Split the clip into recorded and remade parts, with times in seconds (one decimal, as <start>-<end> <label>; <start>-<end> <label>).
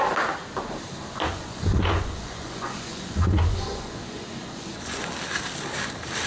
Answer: 0.0-1.3 recorded; 1.3-5.1 remade; 5.1-6.3 recorded